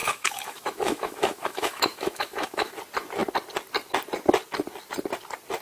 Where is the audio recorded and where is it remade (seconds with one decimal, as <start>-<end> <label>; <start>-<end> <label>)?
0.0-2.7 remade; 2.7-5.6 recorded